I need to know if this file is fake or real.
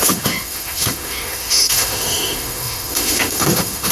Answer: fake